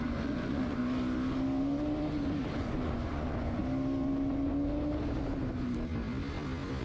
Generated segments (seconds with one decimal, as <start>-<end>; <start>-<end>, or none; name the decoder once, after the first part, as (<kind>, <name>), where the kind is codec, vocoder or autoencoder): 0.0-0.8 (vocoder, Vocos); 2.6-3.6